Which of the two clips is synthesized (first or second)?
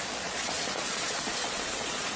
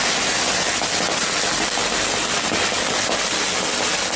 first